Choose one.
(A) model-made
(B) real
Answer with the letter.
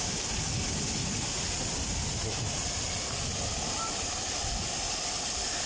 B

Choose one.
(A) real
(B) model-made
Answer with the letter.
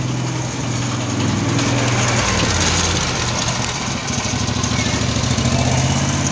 A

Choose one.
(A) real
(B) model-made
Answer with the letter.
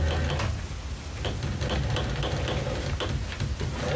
A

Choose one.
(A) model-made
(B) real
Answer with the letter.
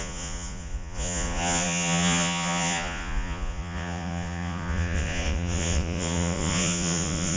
A